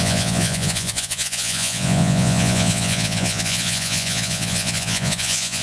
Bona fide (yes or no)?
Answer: no